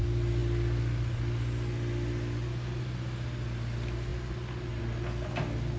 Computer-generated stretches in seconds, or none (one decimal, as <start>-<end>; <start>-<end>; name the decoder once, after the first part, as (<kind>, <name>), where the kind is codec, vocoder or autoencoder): none